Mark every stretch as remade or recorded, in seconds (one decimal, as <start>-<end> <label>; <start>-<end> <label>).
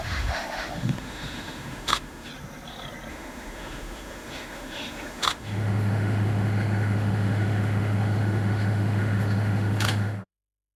0.0-2.3 remade; 2.3-3.1 recorded; 3.1-10.8 remade